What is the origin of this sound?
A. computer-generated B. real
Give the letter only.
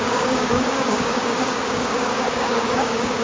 A